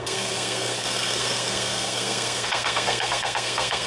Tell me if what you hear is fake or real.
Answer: fake